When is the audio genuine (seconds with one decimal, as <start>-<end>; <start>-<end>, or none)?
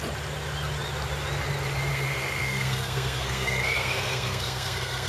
0.0-1.9